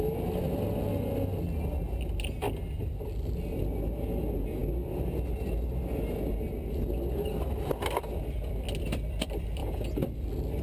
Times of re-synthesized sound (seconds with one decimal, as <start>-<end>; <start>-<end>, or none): none